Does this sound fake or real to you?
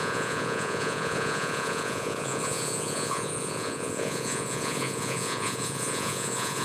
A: fake